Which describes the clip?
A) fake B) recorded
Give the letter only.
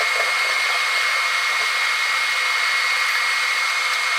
B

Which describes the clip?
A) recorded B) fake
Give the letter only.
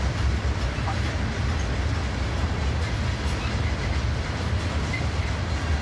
A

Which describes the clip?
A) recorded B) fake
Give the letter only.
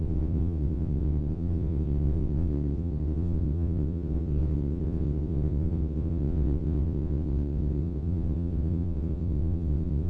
B